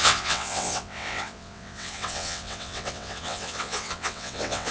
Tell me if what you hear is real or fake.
fake